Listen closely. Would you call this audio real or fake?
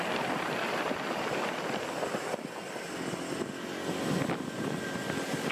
real